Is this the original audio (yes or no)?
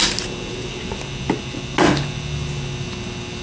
yes